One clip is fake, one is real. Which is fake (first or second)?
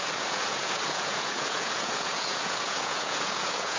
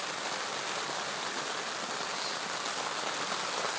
first